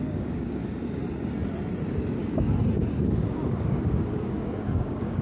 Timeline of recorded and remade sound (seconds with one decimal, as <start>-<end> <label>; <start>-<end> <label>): 0.0-0.6 remade; 0.6-3.0 recorded; 3.0-5.2 remade

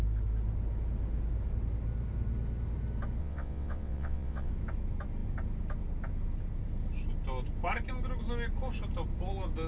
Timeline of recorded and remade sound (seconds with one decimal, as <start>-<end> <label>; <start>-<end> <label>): 0.0-3.2 recorded; 3.2-4.5 remade; 4.5-9.7 recorded

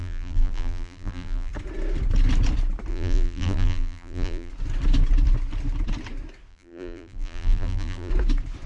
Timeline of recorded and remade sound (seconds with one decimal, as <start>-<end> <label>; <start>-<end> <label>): 0.0-1.5 remade; 1.5-2.9 recorded; 2.9-4.5 remade; 4.5-6.5 recorded; 6.5-8.1 remade; 8.1-8.7 recorded

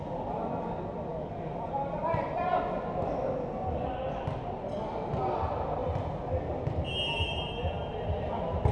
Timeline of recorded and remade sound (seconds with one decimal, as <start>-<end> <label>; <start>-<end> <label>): 0.0-8.7 recorded

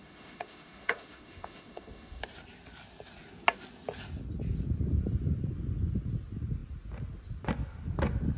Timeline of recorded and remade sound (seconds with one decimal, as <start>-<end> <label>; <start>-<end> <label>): 0.0-2.2 remade; 2.2-8.4 recorded

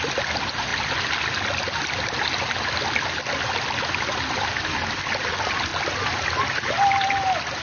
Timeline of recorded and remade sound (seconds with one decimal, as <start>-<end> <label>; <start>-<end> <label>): 0.0-7.6 recorded